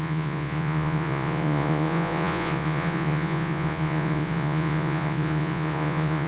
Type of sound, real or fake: fake